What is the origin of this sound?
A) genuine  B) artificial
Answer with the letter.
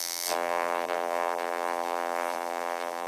B